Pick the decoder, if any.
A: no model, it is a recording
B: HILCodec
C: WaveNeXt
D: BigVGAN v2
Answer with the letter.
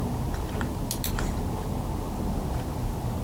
A